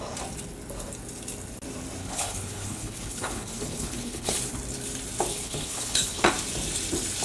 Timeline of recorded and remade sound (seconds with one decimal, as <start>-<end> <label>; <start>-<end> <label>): 0.0-2.0 recorded; 2.0-4.4 remade; 4.4-5.3 recorded; 5.3-6.3 remade; 6.3-7.2 recorded